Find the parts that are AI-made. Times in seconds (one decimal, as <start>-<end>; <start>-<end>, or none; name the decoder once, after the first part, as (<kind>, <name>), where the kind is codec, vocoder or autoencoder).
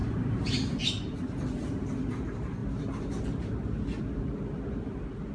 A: 0.0-0.9 (vocoder, BigVGAN v2); 2.6-5.3